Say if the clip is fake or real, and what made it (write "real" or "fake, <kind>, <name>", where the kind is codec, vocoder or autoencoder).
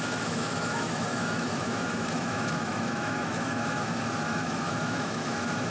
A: fake, autoencoder, DAC-VAE